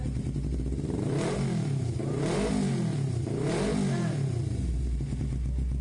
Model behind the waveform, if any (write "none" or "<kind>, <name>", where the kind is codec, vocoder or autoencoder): none